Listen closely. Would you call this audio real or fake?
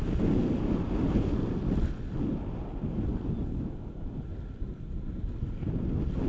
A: real